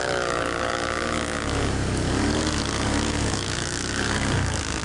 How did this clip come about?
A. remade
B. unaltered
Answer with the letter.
A